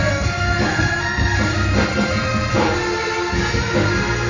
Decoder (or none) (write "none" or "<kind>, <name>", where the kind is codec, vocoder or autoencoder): none